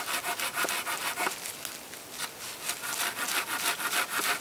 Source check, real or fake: real